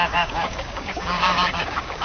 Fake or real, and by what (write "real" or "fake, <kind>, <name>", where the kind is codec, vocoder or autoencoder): fake, codec, DAC